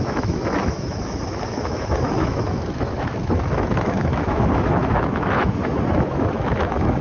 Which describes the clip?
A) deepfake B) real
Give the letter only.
A